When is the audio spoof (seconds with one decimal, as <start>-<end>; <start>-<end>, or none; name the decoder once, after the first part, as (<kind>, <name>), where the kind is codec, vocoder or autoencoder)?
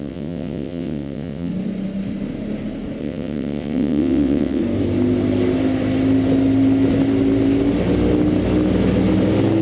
0.0-1.5 (vocoder, WaveNeXt); 3.0-4.6